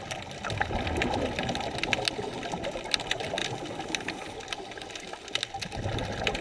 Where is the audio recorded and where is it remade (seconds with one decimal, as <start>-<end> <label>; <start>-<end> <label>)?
0.0-6.4 recorded